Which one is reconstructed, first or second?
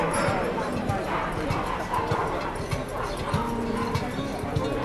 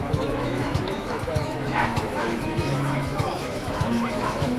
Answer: second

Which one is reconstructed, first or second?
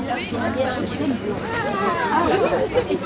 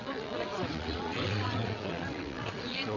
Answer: second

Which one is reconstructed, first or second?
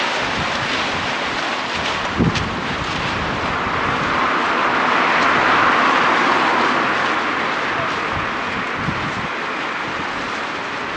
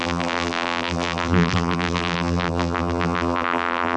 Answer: second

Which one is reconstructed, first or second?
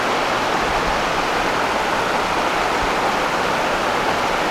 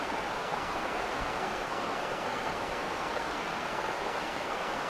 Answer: second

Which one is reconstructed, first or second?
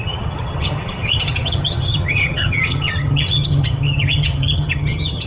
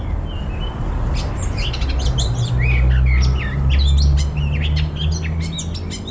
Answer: first